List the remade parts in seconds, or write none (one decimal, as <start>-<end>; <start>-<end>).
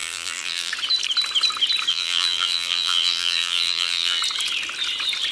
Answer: 0.0-0.7; 1.9-4.2